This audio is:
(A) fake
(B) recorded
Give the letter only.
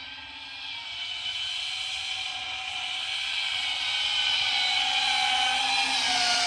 B